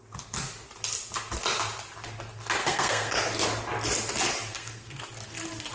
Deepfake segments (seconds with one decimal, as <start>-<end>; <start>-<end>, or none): 2.6-3.2; 4.5-5.0

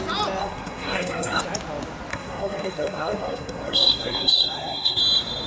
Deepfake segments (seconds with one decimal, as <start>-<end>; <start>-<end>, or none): 0.4-1.4; 2.1-5.0

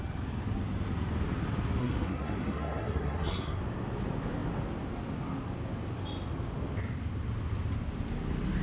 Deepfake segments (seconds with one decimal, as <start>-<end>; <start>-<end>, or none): 1.8-3.6

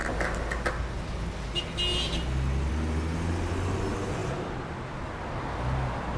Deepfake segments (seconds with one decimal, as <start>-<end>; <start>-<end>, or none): none

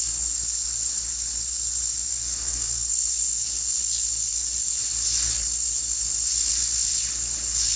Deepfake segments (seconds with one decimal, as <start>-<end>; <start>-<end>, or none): 2.1-2.9